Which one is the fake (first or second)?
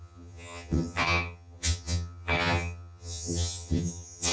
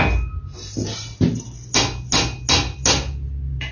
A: first